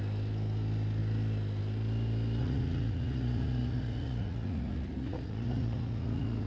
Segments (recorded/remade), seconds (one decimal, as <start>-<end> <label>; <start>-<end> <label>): 0.0-2.4 recorded; 2.4-6.5 remade